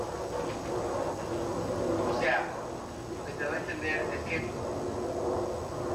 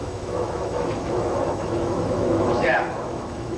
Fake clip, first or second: second